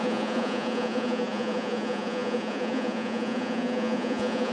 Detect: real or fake fake